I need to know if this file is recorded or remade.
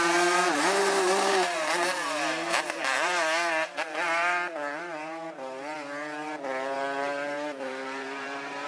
remade